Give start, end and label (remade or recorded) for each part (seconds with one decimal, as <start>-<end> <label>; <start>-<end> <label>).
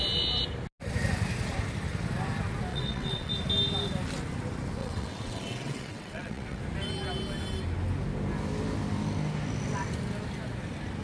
0.0-2.7 recorded; 2.7-3.3 remade; 3.3-4.8 recorded; 4.8-6.6 remade; 6.6-11.0 recorded